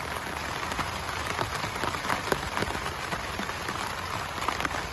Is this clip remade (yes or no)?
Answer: no